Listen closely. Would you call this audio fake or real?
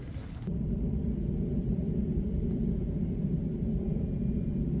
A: real